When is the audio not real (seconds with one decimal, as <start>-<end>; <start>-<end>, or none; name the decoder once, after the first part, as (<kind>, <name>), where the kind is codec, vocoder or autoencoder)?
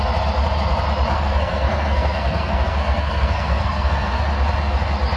1.1-4.2 (codec, SNAC)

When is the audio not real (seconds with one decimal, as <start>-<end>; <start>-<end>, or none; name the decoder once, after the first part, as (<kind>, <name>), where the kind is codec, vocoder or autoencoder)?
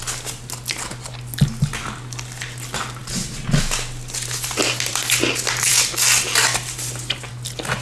none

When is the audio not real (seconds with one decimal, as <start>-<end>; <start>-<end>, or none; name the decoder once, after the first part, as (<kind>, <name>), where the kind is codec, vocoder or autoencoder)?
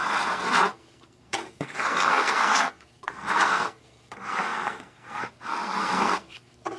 0.0-6.8 (codec, SNAC)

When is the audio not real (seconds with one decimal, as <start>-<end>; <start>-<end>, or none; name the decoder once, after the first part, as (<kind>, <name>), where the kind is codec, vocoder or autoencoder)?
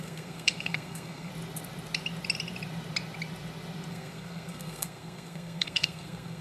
0.0-1.3 (codec, SNAC); 3.9-6.4